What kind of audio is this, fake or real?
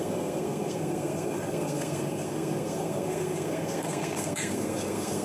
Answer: fake